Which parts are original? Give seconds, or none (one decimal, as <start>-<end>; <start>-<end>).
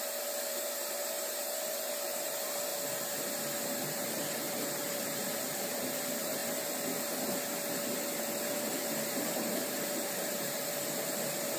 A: 2.7-3.8; 6.4-8.2